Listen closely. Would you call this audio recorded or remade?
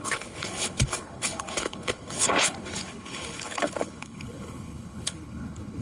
remade